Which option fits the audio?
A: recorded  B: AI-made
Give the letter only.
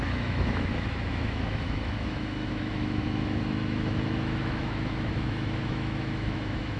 B